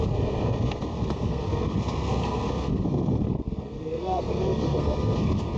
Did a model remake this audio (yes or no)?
yes